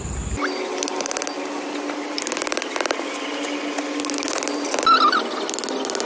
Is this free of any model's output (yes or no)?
yes